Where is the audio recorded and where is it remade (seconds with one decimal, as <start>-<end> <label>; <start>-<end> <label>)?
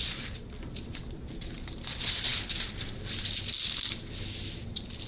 0.0-5.1 recorded